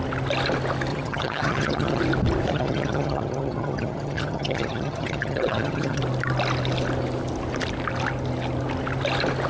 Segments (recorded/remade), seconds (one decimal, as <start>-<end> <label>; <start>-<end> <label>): 0.0-0.9 recorded; 0.9-2.0 remade; 2.0-2.5 recorded; 2.5-6.0 remade; 6.0-9.5 recorded